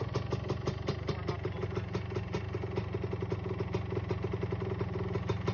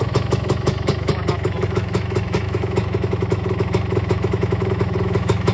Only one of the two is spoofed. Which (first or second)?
second